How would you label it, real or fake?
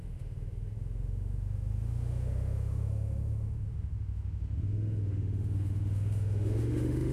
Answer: fake